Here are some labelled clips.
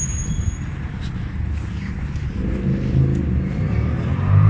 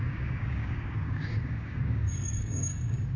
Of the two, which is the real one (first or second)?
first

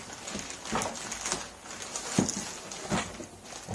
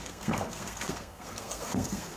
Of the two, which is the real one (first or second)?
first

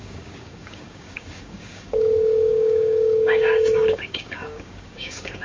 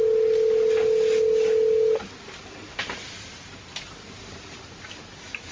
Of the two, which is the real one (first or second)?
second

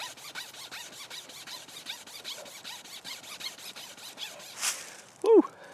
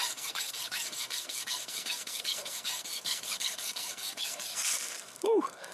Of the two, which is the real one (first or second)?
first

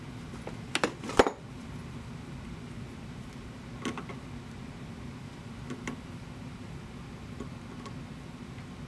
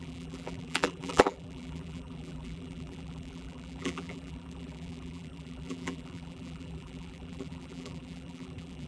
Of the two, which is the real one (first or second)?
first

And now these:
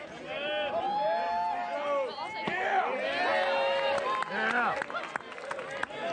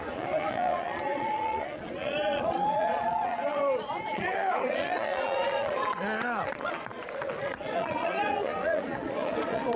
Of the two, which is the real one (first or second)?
first